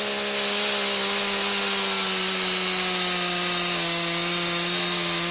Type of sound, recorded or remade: recorded